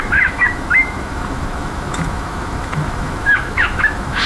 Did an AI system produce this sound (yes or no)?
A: yes